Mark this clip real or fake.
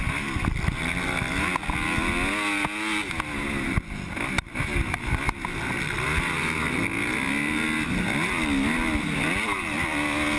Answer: real